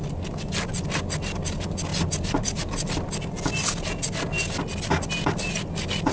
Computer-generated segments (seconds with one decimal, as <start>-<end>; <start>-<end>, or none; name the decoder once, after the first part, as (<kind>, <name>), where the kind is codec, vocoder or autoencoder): none

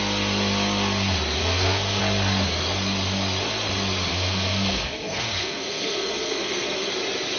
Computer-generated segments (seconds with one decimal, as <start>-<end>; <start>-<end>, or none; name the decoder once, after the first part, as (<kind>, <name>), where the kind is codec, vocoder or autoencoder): 1.4-2.0 (codec, SNAC); 4.1-6.9

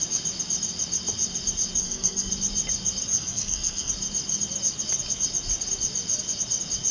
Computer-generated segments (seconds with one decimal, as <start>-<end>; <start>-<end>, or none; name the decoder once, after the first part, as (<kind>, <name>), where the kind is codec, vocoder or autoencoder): 1.8-2.3 (codec, SNAC); 3.1-3.9